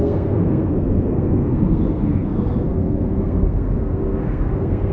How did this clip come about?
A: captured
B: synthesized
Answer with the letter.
B